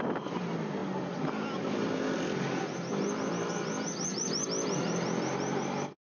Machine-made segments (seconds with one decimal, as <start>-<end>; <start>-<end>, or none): none